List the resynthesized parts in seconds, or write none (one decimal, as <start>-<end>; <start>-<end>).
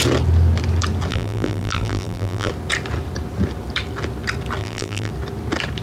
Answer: 1.1-2.5; 4.6-5.1